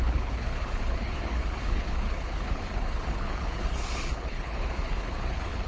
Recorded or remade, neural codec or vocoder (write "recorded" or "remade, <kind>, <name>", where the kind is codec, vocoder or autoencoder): remade, codec, HILCodec